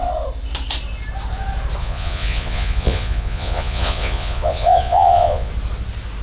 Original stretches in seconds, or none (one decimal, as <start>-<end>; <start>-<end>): 0.0-1.8; 5.5-6.2